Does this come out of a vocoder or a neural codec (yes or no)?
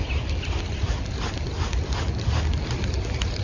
no